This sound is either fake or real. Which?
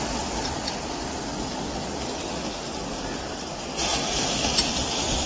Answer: real